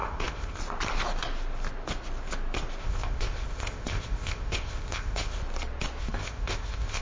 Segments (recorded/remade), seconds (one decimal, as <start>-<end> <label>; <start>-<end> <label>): 0.0-0.6 remade; 0.6-2.8 recorded; 2.8-5.4 remade; 5.4-6.0 recorded; 6.0-7.0 remade